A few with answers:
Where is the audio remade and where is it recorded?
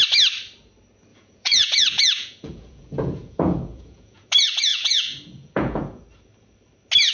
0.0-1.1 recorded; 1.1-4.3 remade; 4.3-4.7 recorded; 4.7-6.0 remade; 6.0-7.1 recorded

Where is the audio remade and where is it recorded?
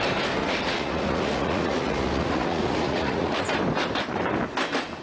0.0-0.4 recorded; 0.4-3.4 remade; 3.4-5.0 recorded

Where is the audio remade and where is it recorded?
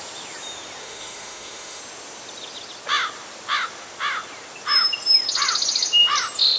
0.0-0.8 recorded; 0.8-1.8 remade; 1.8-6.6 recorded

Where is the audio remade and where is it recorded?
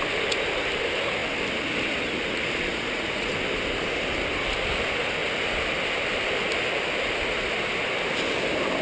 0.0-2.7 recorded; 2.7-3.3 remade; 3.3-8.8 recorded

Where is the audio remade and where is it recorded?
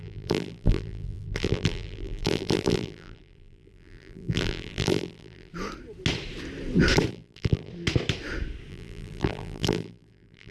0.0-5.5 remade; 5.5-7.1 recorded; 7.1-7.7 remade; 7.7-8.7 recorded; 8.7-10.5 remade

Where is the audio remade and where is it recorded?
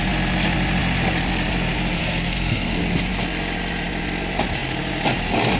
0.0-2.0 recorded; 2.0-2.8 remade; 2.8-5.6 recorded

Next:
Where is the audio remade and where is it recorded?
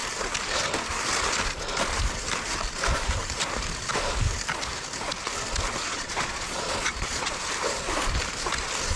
0.0-5.8 recorded; 5.8-7.3 remade; 7.3-9.0 recorded